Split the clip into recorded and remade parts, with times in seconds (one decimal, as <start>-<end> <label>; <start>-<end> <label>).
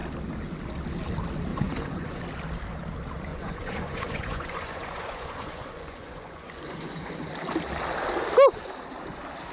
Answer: 0.0-1.5 recorded; 1.5-2.2 remade; 2.2-3.3 recorded; 3.3-7.3 remade; 7.3-9.5 recorded